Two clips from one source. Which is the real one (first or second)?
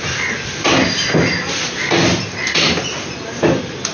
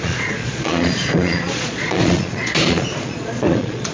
first